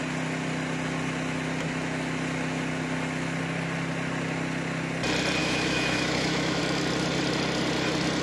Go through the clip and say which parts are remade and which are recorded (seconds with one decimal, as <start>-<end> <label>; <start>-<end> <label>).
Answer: 0.0-5.4 recorded; 5.4-6.6 remade; 6.6-8.2 recorded